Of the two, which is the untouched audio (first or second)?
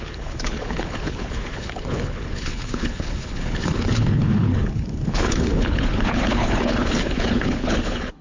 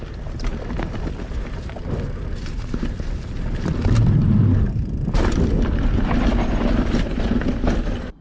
second